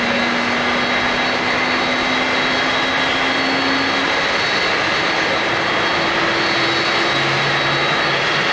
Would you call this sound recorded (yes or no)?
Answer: yes